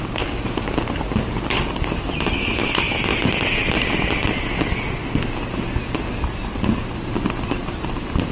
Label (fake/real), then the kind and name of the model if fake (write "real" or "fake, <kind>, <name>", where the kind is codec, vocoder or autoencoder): real